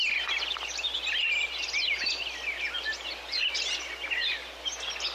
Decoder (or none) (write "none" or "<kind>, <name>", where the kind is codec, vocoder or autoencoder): none